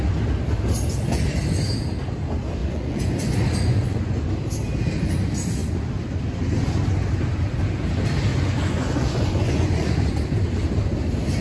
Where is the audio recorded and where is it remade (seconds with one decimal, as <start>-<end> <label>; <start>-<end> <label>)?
0.0-2.6 recorded; 2.6-4.3 remade; 4.3-8.3 recorded; 8.3-10.0 remade; 10.0-11.4 recorded